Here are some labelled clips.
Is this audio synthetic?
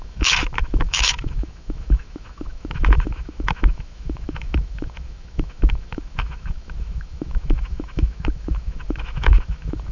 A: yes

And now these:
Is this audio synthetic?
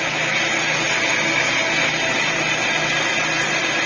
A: no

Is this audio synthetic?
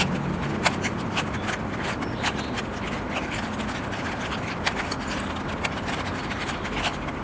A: no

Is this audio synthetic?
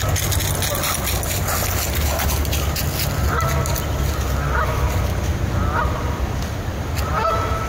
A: no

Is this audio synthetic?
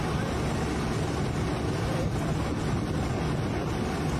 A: no